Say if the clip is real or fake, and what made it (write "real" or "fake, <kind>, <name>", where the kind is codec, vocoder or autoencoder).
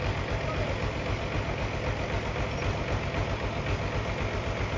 real